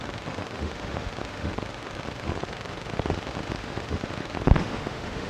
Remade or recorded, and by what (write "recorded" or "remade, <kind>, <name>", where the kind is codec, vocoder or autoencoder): remade, autoencoder, DAC-VAE